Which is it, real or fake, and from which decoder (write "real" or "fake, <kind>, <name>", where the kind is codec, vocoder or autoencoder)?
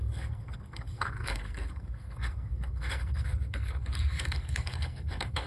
fake, codec, SNAC